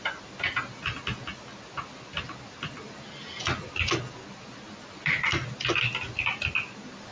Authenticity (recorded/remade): recorded